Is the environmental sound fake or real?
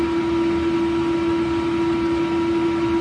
real